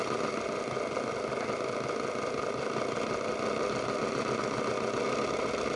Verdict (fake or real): real